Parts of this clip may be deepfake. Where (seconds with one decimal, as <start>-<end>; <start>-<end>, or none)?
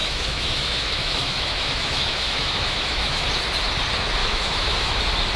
0.0-3.2; 4.2-5.0